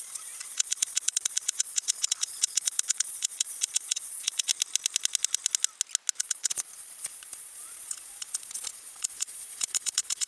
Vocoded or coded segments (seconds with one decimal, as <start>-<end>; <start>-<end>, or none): 0.0-4.5; 6.2-10.3